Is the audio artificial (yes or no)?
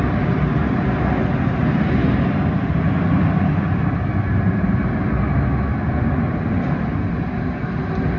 no